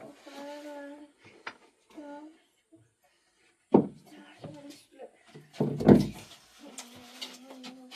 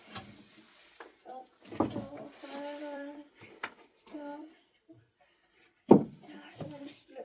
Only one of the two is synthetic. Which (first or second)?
second